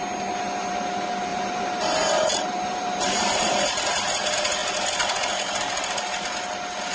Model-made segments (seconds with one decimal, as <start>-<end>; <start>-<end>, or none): 1.3-3.2